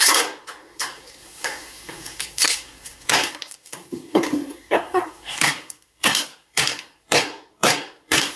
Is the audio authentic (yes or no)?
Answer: no